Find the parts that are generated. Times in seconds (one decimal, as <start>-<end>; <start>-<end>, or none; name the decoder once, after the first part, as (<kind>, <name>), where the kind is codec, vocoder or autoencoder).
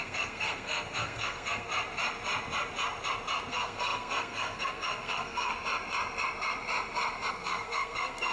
0.0-1.7 (codec, SNAC); 3.5-5.5; 7.3-8.3